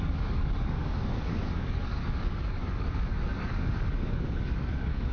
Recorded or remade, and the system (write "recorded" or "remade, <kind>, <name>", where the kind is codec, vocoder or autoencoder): remade, codec, DAC